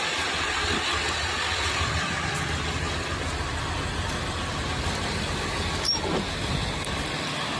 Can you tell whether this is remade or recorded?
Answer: recorded